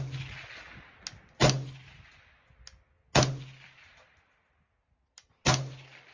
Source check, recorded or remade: recorded